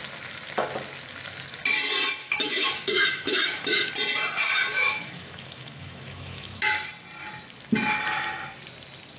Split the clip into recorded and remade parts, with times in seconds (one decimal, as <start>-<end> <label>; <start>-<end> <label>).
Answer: 0.0-2.2 recorded; 2.2-3.9 remade; 3.9-4.7 recorded; 4.7-6.7 remade; 6.7-9.2 recorded